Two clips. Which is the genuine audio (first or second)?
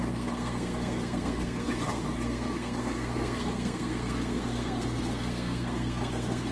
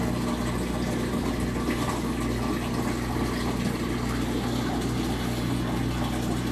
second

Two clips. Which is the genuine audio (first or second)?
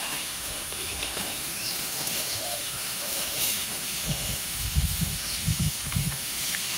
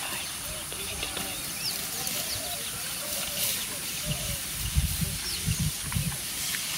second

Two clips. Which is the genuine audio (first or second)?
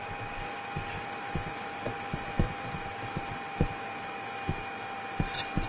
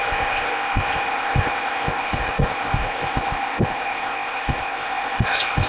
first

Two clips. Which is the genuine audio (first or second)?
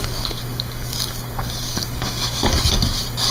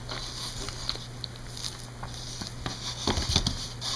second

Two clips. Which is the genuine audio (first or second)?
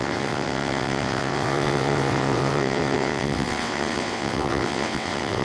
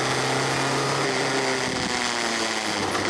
second